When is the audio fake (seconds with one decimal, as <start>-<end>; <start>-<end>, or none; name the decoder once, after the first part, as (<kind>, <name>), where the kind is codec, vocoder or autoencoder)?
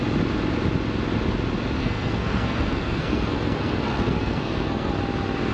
1.8-4.9 (codec, SNAC)